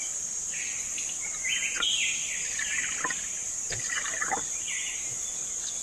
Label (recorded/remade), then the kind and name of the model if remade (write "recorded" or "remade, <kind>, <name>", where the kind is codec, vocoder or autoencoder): recorded